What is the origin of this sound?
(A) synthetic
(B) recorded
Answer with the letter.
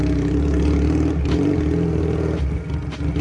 B